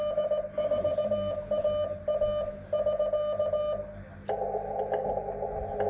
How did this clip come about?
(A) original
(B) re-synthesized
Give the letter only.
A